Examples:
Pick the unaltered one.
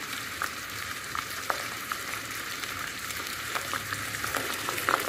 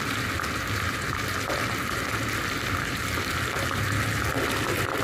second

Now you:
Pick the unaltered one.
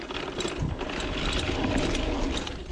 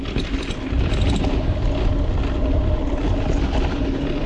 second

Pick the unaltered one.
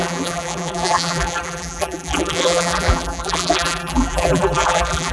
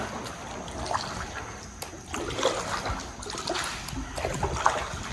second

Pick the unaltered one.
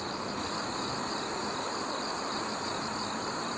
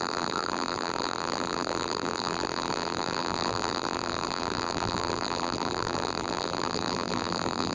first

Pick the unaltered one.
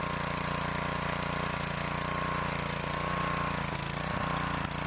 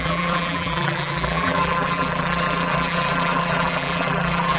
first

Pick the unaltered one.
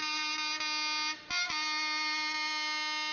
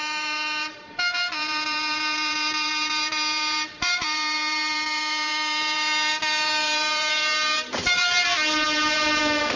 first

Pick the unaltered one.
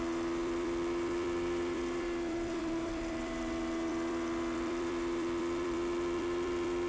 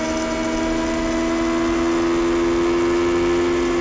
second